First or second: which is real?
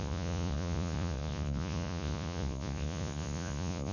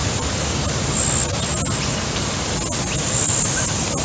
second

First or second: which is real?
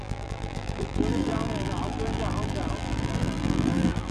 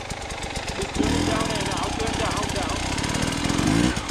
second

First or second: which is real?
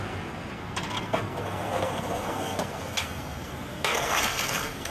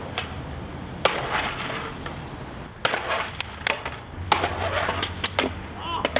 second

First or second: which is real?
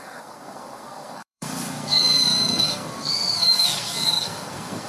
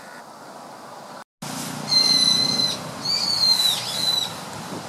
second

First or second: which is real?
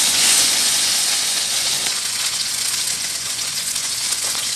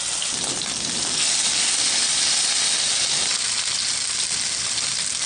second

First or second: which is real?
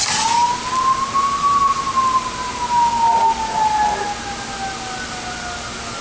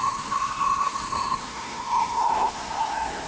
first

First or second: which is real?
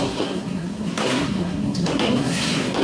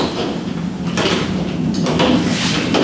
second